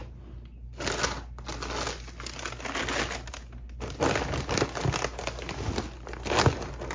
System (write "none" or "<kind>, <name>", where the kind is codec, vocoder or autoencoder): none